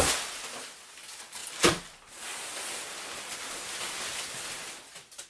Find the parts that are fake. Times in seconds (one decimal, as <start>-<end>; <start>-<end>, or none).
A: none